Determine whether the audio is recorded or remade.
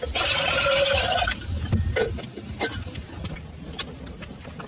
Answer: recorded